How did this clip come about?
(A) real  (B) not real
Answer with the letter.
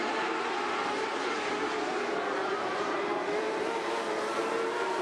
B